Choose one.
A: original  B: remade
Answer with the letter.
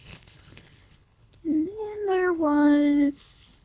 B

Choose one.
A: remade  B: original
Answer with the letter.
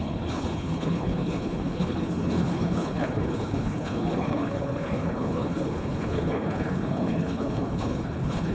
A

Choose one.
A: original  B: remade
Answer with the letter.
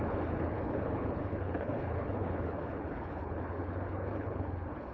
B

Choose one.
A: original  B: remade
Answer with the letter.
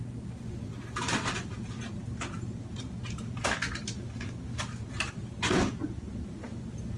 A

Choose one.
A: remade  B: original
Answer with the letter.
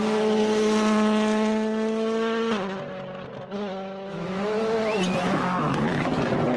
B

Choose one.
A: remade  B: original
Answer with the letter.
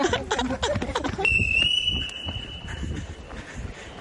B